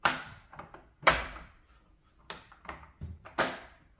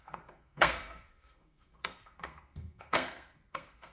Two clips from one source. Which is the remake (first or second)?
second